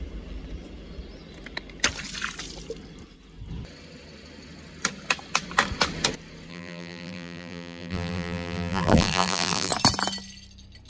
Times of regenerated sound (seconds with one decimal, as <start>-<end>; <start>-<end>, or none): 6.5-9.7